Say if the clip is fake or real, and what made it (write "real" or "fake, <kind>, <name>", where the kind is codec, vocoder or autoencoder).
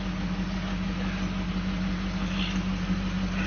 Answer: real